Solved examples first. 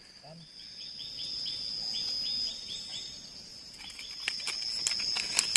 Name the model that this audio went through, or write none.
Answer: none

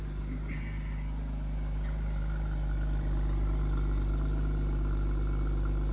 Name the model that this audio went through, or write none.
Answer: none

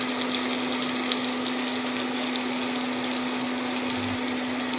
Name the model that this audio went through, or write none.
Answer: none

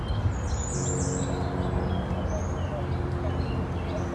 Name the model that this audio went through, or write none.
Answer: none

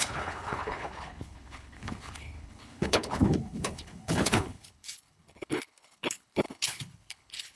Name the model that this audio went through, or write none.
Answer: codec, HILCodec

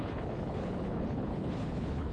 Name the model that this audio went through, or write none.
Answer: codec, HILCodec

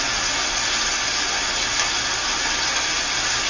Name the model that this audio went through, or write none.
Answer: none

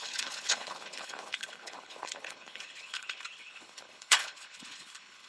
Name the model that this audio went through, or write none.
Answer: codec, HILCodec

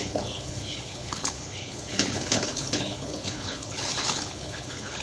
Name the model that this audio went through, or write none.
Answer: codec, HILCodec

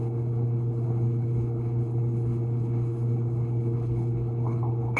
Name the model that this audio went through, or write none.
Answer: codec, HILCodec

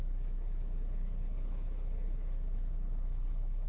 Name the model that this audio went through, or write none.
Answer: codec, HILCodec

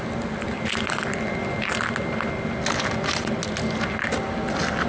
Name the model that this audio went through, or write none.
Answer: none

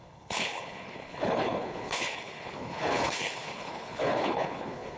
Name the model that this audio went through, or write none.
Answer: codec, HILCodec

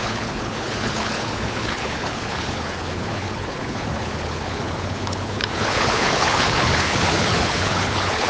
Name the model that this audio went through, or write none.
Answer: codec, HILCodec